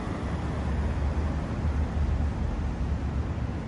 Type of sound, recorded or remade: recorded